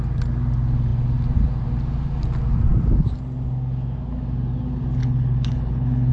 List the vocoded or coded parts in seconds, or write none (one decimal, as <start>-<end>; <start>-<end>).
5.0-6.1